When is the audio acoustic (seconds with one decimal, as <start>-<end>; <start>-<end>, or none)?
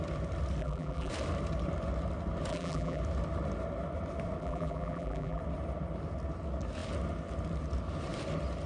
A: 0.0-0.6; 1.1-2.5; 3.0-4.4; 5.4-8.7